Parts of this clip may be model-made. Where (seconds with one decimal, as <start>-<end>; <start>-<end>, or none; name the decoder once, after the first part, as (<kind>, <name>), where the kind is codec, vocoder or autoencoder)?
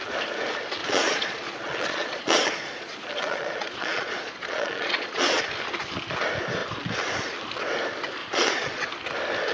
0.8-5.4 (vocoder, Vocos); 8.2-8.9